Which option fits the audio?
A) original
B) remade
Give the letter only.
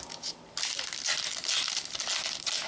A